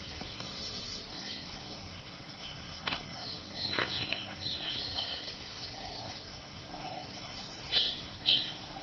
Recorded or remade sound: remade